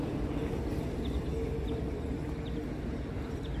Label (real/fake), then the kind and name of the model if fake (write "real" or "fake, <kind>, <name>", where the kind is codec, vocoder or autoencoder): real